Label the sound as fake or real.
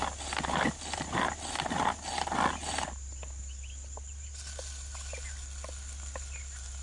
real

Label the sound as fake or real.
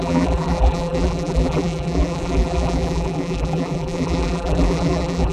fake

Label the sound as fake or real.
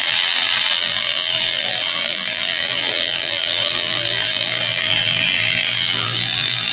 fake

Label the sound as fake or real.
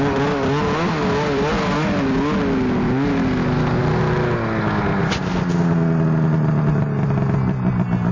real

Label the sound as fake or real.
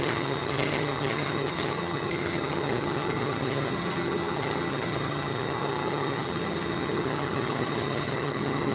fake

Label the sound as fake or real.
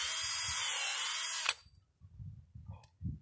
real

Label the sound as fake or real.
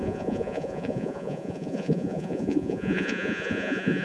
fake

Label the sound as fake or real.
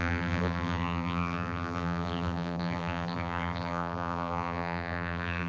fake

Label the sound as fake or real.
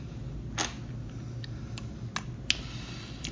real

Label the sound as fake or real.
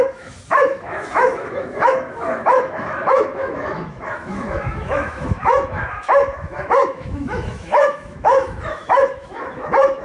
fake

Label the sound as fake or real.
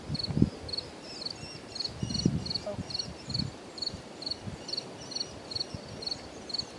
real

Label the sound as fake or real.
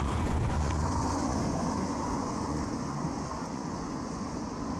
fake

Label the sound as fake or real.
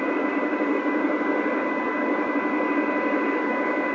real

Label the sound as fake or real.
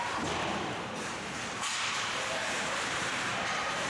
fake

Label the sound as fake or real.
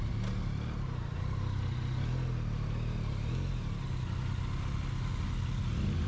real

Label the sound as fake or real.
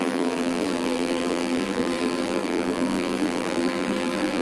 fake